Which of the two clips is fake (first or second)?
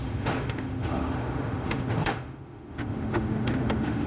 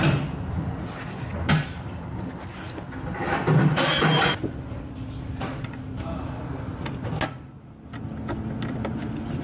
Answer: first